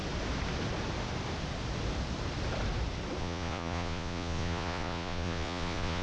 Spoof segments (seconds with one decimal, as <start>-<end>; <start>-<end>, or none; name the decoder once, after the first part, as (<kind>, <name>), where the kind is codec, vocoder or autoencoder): 3.2-6.0 (vocoder, Vocos)